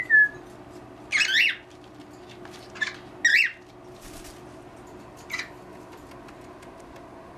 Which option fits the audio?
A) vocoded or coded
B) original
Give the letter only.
B